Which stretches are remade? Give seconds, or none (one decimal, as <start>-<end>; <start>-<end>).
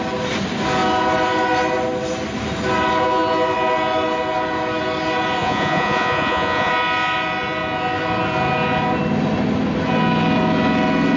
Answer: 5.4-6.7